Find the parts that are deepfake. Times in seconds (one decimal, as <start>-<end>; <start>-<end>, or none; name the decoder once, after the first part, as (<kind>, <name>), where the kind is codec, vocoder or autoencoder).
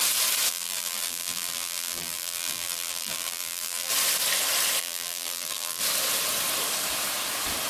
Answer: 0.5-3.9 (vocoder, BigVGAN v2); 4.8-5.8